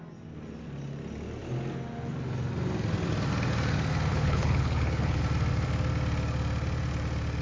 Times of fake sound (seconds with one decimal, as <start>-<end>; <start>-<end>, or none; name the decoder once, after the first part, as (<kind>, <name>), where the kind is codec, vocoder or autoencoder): 4.1-5.2 (codec, HILCodec)